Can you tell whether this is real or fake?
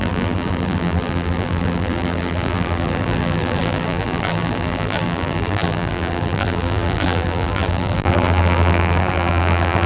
fake